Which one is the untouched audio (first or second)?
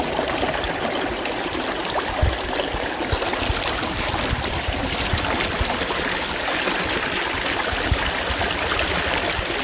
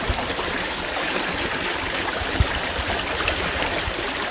first